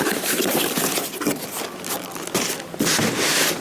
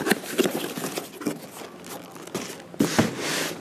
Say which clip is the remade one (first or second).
first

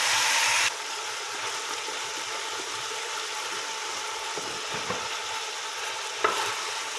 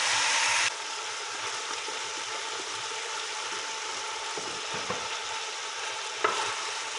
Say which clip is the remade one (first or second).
second